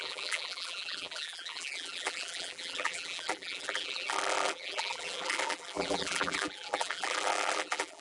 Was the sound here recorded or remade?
remade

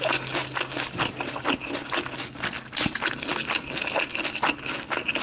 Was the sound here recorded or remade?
recorded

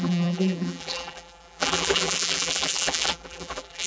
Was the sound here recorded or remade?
remade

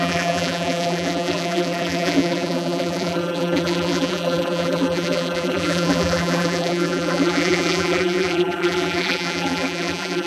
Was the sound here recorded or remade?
remade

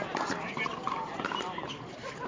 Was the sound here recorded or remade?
remade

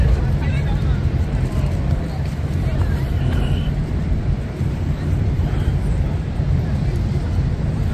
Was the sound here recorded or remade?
remade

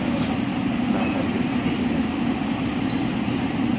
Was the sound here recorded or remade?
recorded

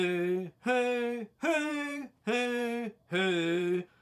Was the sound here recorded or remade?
remade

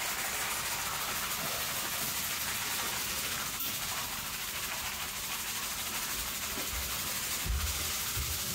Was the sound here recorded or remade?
recorded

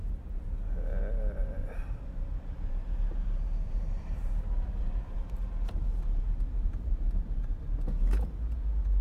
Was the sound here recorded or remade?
remade